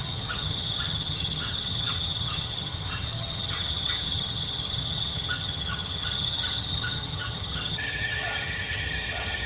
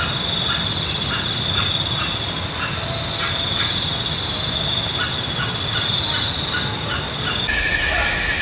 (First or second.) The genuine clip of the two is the second